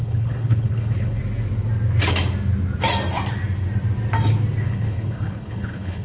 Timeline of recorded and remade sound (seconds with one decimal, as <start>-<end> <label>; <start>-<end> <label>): 0.0-1.2 remade; 1.2-4.6 recorded; 4.6-6.0 remade